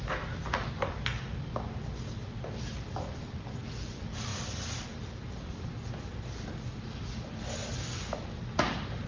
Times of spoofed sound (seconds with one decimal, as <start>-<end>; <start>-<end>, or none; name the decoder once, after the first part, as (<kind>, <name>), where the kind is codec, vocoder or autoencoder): none